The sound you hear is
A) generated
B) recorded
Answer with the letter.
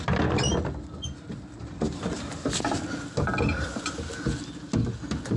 B